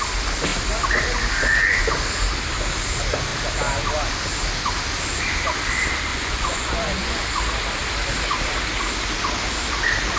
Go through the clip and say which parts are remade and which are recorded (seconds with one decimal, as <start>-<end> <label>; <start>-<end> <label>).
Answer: 0.0-6.1 recorded; 6.1-7.2 remade; 7.2-10.2 recorded